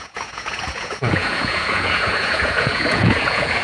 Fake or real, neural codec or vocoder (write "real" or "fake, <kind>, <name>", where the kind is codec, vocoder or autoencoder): fake, vocoder, Vocos